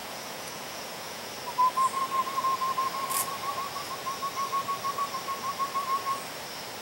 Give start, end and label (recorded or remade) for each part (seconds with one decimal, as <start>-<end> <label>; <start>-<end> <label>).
0.0-1.3 remade; 1.3-6.8 recorded